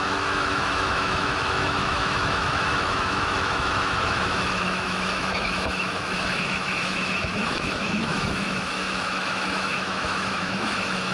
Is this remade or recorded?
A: remade